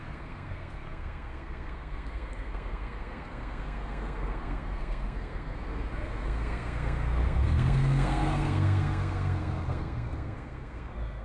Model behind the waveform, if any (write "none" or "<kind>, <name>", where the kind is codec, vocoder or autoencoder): codec, SNAC